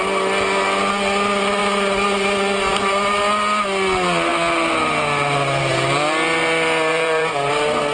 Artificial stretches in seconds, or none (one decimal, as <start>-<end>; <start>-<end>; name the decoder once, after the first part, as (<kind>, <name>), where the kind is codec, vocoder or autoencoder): 6.9-7.5 (vocoder, Vocos)